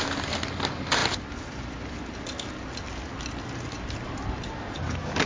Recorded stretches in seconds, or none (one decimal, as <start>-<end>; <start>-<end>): 0.0-5.3